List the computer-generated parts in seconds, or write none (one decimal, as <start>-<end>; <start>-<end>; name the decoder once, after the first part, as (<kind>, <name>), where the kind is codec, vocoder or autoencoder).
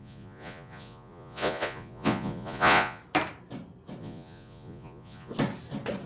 0.0-3.0 (vocoder, Vocos); 4.0-5.3